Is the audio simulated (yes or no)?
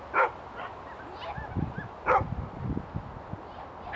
no